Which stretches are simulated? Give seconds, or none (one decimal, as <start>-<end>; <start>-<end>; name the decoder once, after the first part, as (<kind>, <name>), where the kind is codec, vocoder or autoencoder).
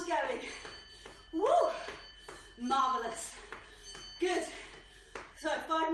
0.0-3.8 (vocoder, BigVGAN v2); 4.3-5.9